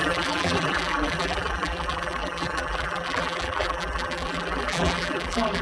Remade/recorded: remade